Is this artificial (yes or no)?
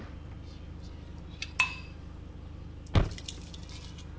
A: no